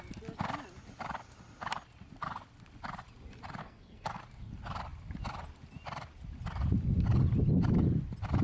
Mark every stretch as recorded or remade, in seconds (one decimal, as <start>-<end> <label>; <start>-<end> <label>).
0.0-3.6 recorded; 3.6-4.2 remade; 4.2-8.4 recorded